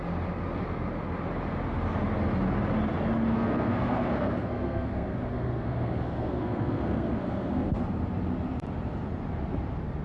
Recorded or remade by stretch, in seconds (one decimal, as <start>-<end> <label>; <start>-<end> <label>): 0.0-3.3 recorded; 3.3-7.8 remade; 7.8-10.0 recorded